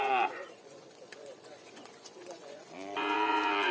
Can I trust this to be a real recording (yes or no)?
no